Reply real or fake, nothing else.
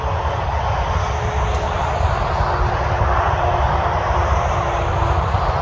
real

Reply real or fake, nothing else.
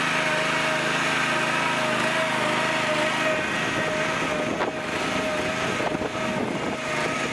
real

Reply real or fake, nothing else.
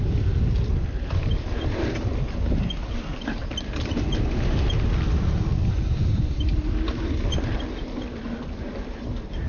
real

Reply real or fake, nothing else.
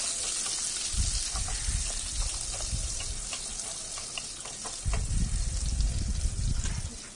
real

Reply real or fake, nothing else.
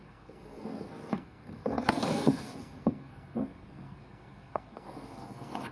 fake